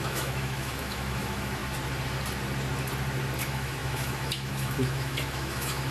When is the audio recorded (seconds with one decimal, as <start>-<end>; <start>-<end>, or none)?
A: 1.6-3.4